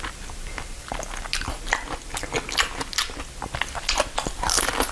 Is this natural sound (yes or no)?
yes